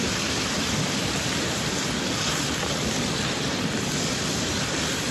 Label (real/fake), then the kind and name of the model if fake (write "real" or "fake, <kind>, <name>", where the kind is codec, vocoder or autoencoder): fake, vocoder, BigVGAN v2